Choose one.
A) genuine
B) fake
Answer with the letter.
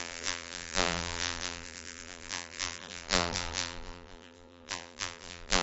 B